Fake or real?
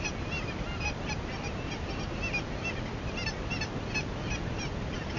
real